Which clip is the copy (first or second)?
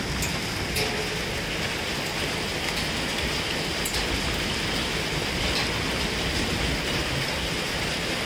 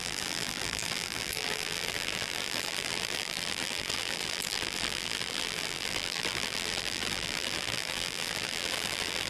second